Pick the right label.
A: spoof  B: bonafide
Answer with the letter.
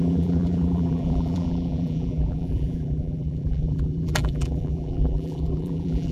A